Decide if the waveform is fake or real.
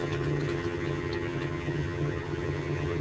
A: fake